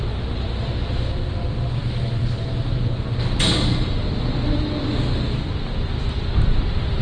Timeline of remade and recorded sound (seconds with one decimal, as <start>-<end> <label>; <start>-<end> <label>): 0.0-7.0 recorded